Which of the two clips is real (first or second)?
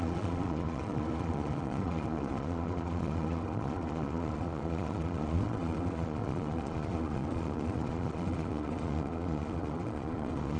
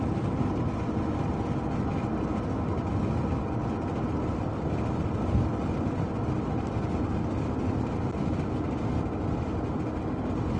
second